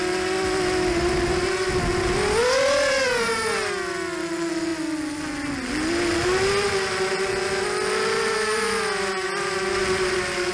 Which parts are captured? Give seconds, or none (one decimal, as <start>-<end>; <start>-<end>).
0.0-10.5